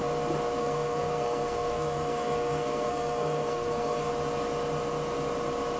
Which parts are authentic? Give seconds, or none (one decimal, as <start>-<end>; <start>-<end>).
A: 0.0-0.6; 4.1-5.8